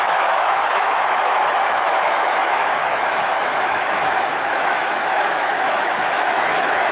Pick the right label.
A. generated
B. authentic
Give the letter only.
A